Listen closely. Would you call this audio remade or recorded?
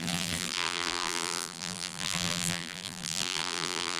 remade